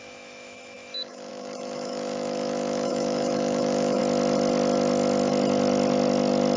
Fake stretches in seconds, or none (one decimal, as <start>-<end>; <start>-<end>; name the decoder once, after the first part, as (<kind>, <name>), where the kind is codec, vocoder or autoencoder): 0.0-4.0 (autoencoder, DAC-VAE)